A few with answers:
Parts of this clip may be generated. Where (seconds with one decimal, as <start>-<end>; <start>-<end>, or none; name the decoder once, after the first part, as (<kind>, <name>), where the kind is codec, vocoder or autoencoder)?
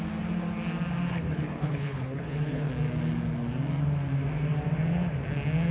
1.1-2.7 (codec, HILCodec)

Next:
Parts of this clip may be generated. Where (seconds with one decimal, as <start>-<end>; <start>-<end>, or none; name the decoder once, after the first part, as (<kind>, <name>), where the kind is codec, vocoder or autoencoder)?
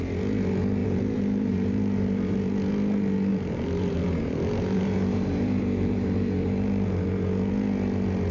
0.8-2.5 (vocoder, BigVGAN v2); 3.3-7.5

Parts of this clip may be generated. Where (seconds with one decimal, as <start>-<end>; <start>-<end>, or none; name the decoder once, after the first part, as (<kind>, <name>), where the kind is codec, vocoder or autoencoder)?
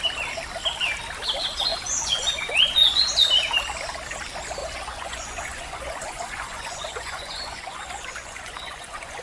1.7-3.1 (vocoder, Vocos); 4.6-9.2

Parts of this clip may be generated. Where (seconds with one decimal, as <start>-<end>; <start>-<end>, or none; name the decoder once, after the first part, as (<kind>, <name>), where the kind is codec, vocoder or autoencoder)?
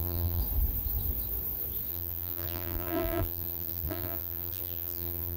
0.0-0.4 (vocoder, BigVGAN v2); 1.9-5.4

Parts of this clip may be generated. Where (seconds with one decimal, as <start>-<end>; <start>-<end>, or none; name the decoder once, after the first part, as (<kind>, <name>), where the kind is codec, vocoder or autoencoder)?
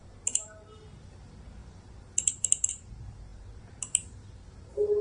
0.0-1.6 (vocoder, BigVGAN v2); 2.7-5.0